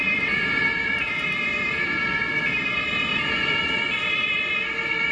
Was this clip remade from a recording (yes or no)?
no